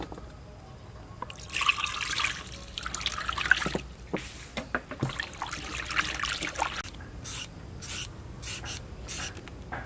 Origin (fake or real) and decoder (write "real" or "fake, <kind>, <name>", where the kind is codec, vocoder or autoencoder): real